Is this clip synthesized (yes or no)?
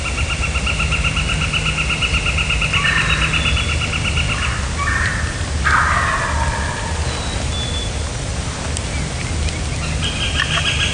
no